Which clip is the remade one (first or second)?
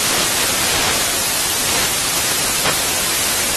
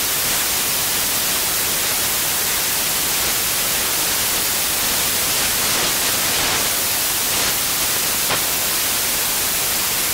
first